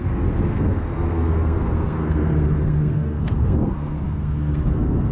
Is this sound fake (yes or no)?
yes